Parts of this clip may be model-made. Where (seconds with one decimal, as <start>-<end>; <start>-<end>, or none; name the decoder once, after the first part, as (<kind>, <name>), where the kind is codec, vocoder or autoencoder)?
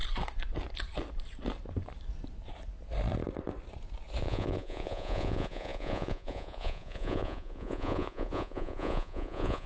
4.2-9.7 (vocoder, Vocos)